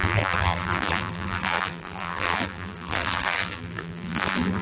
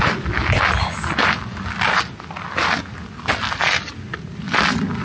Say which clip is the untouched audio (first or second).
second